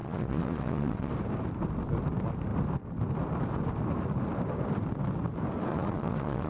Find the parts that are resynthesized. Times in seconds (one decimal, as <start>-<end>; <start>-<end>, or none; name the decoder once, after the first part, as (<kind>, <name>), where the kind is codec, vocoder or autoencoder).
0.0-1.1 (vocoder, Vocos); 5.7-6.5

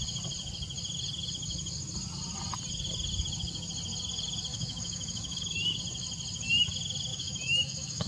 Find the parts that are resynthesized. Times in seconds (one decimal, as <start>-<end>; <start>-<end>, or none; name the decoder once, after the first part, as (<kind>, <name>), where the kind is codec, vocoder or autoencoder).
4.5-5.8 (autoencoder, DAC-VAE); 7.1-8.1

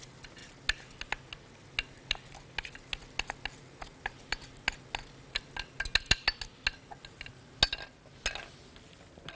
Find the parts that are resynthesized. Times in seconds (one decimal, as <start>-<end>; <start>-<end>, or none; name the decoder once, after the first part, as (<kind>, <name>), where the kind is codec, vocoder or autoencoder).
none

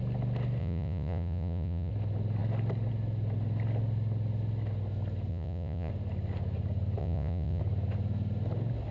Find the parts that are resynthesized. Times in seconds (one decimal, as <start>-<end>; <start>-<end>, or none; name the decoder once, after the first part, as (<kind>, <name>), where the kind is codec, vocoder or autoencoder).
0.6-1.9 (vocoder, Vocos); 5.3-5.9; 7.0-7.6

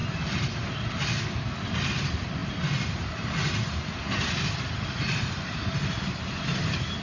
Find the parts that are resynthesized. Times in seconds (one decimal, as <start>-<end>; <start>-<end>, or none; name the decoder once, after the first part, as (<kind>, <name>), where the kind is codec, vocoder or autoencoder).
none